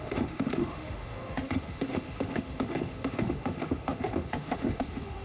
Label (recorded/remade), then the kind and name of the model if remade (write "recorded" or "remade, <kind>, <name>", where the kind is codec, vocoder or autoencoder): remade, autoencoder, DAC-VAE